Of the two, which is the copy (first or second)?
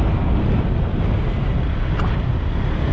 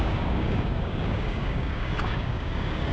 second